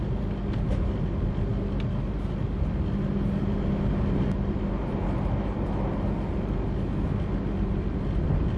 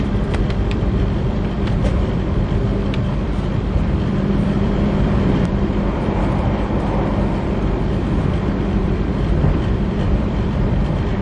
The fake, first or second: second